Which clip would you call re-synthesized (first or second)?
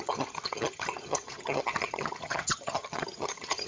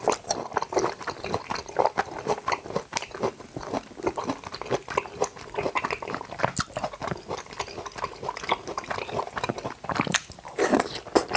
first